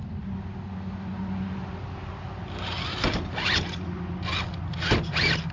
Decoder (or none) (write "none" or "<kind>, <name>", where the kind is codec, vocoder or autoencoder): none